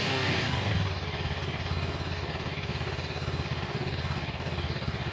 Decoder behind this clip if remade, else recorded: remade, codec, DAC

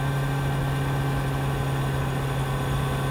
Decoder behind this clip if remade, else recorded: recorded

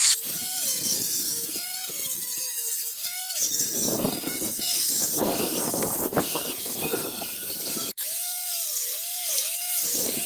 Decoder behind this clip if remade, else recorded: remade, codec, SNAC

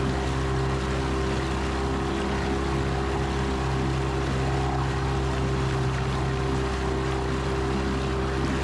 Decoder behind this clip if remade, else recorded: recorded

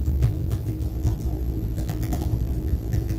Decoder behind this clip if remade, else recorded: remade, vocoder, BigVGAN v2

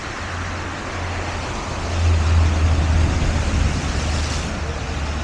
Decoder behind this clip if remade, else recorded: recorded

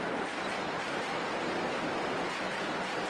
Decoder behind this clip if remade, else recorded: recorded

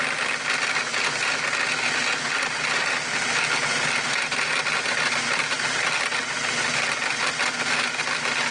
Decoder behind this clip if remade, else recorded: recorded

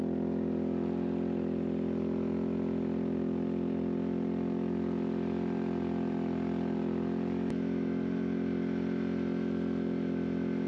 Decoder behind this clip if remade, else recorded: recorded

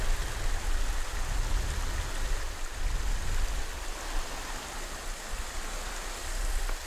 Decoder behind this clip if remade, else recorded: recorded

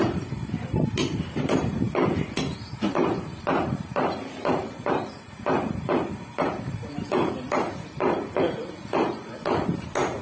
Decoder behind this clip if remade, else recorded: remade, vocoder, BigVGAN v2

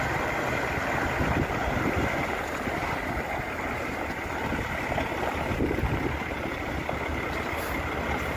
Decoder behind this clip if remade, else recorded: recorded